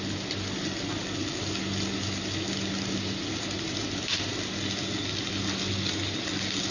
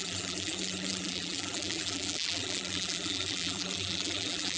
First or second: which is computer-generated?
second